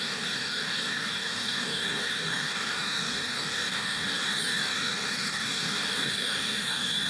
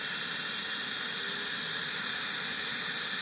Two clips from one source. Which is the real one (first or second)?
second